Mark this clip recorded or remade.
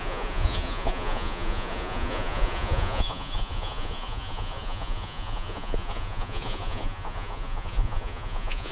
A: remade